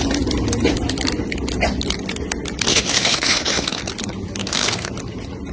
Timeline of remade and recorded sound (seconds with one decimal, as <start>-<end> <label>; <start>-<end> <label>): 0.0-2.7 recorded; 2.7-3.8 remade; 3.8-4.4 recorded; 4.4-4.9 remade; 4.9-5.5 recorded